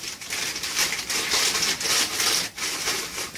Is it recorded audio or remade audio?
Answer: recorded